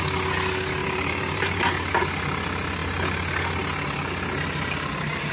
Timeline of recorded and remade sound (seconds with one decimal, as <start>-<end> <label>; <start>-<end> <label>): 0.0-0.8 recorded; 0.8-1.7 remade; 1.7-5.3 recorded